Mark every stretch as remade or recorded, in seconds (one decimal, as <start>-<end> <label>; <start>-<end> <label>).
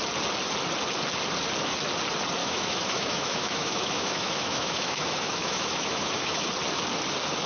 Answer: 0.0-2.4 recorded; 2.4-6.5 remade; 6.5-7.5 recorded